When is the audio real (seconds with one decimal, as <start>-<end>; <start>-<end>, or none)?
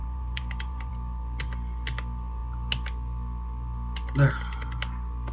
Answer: 0.9-5.3